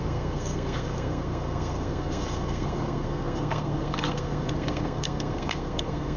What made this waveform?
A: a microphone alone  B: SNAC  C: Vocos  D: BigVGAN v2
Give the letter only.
B